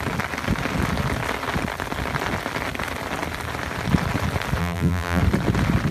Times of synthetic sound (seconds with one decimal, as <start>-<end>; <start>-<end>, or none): 4.6-5.2